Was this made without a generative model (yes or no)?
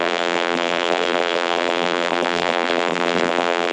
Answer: no